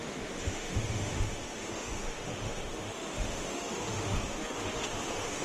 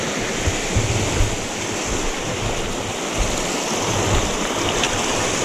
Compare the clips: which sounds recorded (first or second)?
second